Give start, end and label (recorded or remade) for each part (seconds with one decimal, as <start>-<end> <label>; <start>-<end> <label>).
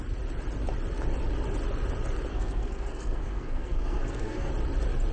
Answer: 0.0-2.3 recorded; 2.3-4.5 remade; 4.5-5.1 recorded